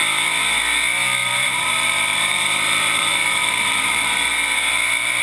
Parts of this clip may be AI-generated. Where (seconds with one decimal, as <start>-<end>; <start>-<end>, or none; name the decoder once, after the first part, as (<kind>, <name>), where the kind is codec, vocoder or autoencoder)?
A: 1.2-4.3 (vocoder, BigVGAN v2)